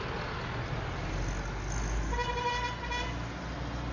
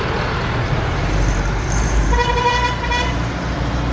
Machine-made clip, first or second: second